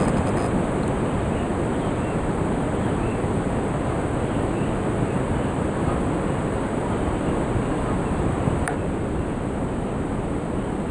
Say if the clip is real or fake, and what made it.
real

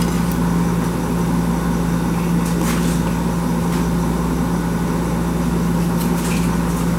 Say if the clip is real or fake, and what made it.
real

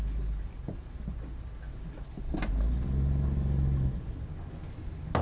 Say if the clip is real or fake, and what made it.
real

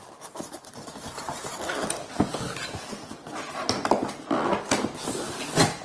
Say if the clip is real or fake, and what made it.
real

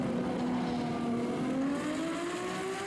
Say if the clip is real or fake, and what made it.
real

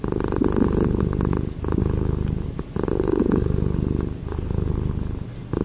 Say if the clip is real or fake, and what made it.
real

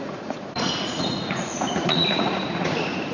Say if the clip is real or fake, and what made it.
fake, vocoder, Vocos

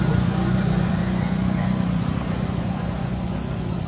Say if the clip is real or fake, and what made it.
fake, vocoder, Vocos